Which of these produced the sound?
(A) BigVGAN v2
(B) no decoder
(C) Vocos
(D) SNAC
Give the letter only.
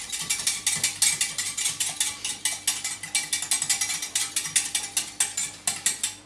B